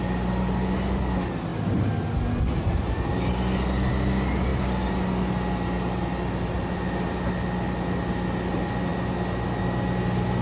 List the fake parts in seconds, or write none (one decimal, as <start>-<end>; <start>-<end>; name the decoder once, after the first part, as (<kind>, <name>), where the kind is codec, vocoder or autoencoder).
none